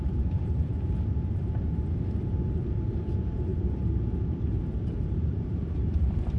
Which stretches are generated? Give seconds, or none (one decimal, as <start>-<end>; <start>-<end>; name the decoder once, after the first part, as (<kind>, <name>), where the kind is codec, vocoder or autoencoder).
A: 0.0-6.4 (vocoder, BigVGAN v2)